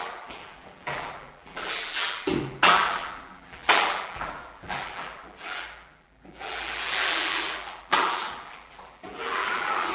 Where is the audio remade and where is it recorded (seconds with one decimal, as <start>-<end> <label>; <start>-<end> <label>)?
0.0-9.9 remade